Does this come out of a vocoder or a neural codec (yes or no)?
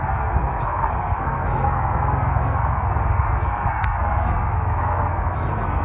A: yes